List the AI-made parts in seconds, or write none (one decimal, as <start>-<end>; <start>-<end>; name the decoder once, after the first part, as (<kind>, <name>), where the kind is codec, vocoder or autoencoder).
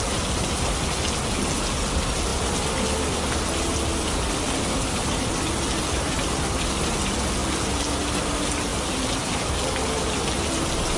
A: none